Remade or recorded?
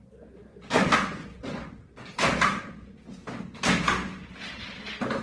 recorded